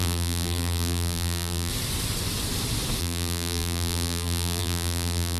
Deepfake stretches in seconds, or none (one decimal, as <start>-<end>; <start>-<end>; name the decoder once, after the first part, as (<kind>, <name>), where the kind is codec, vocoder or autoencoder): 0.0-1.7 (vocoder, BigVGAN v2); 3.0-5.4